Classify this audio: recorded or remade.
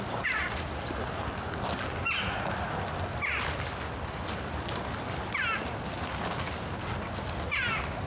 recorded